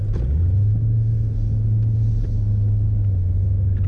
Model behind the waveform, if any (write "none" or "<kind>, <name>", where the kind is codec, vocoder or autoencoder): none